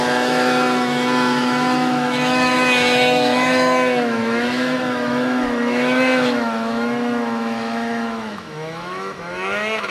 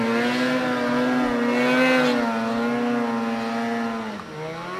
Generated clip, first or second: first